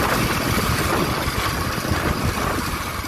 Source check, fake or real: real